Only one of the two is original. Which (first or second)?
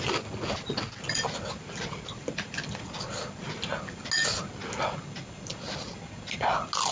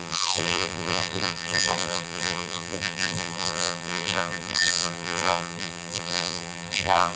first